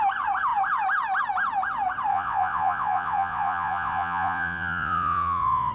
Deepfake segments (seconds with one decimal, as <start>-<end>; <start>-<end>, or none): 2.1-5.7

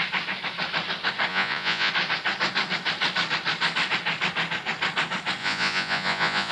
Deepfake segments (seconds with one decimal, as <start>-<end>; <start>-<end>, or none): 1.3-1.9; 5.4-6.5